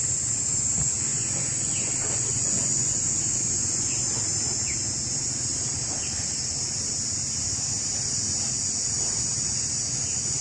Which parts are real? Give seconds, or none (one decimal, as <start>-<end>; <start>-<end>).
0.0-1.1; 3.9-10.4